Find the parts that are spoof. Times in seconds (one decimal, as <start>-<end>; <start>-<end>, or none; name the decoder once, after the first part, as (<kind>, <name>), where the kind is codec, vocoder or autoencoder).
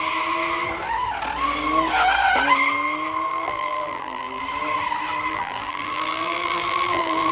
3.3-4.4 (vocoder, BigVGAN v2); 5.3-7.3